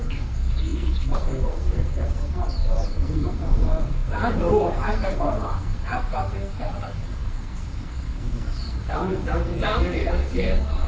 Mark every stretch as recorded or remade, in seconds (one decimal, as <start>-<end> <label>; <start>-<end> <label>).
0.0-10.9 remade